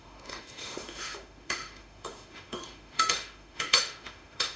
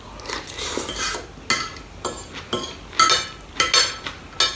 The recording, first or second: second